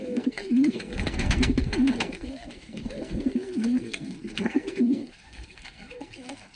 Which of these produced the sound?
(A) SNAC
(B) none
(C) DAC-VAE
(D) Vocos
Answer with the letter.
A